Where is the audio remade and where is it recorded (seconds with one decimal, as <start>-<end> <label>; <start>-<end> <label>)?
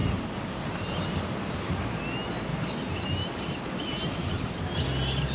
0.0-5.3 recorded